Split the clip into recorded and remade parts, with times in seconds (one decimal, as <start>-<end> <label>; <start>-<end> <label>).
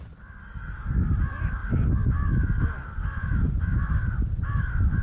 0.0-5.0 recorded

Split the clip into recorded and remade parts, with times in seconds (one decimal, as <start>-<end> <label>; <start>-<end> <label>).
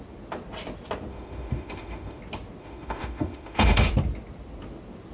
0.0-1.1 recorded; 1.1-2.2 remade; 2.2-2.6 recorded; 2.6-3.9 remade; 3.9-5.1 recorded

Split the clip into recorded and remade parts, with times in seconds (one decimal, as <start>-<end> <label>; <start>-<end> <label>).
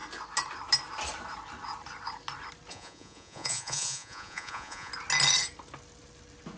0.0-2.7 recorded; 2.7-4.9 remade; 4.9-6.6 recorded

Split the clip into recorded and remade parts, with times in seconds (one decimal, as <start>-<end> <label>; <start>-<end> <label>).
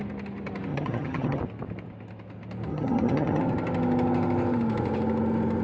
0.0-0.7 recorded; 0.7-1.4 remade; 1.4-2.7 recorded; 2.7-3.4 remade; 3.4-5.6 recorded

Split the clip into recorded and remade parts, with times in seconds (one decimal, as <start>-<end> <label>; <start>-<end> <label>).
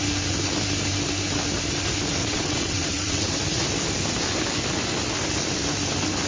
0.0-2.2 recorded; 2.2-3.4 remade; 3.4-6.3 recorded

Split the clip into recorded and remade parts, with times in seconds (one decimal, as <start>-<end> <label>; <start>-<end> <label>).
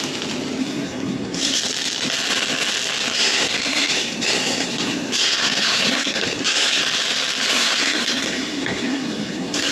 0.0-0.6 recorded; 0.6-1.6 remade; 1.6-3.1 recorded; 3.1-6.8 remade; 6.8-7.5 recorded; 7.5-9.7 remade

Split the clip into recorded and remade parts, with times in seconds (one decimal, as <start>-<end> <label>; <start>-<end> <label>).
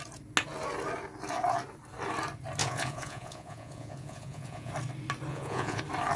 0.0-2.6 recorded; 2.6-4.7 remade; 4.7-5.3 recorded; 5.3-5.8 remade; 5.8-6.2 recorded